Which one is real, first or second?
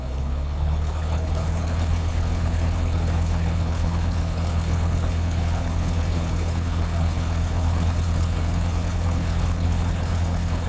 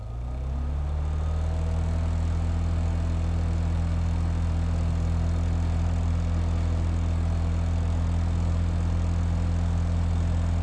second